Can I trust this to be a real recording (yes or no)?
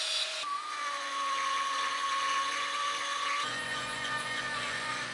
no